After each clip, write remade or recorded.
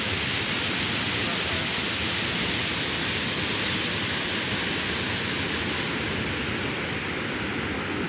recorded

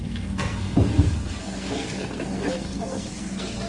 remade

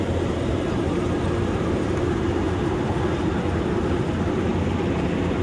recorded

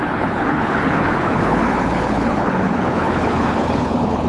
remade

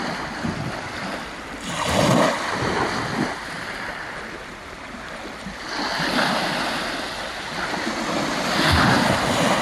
recorded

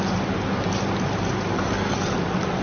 recorded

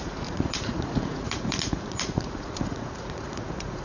remade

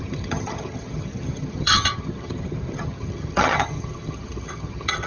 remade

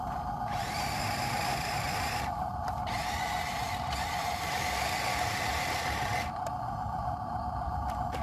remade